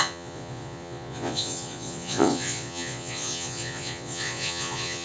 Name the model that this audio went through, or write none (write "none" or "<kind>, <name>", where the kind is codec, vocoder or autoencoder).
vocoder, Vocos